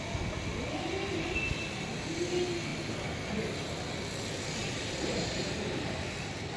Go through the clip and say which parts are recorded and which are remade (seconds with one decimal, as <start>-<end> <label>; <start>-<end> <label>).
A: 0.0-4.6 recorded; 4.6-5.4 remade; 5.4-6.6 recorded